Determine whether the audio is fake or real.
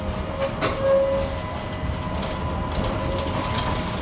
real